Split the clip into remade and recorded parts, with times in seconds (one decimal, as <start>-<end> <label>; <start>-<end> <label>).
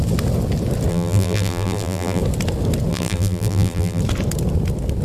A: 0.0-0.9 recorded; 0.9-2.2 remade; 2.2-2.9 recorded; 2.9-4.0 remade; 4.0-5.0 recorded